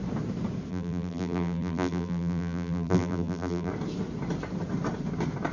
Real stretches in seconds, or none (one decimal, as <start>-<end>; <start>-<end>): 0.0-0.7; 3.7-5.5